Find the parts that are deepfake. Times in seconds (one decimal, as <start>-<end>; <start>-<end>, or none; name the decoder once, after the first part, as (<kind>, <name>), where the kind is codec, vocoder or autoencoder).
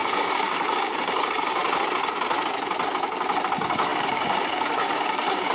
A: 0.0-1.6 (codec, DAC); 3.5-5.5